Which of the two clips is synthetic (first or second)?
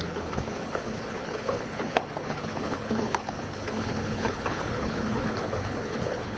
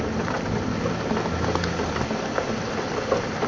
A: first